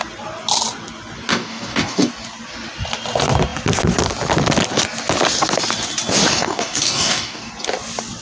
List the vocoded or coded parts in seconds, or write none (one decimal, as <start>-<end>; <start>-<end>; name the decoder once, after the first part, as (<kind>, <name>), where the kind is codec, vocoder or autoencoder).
1.3-2.1 (codec, DAC); 6.3-7.5